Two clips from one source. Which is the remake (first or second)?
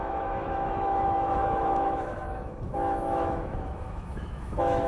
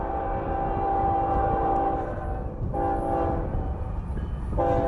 first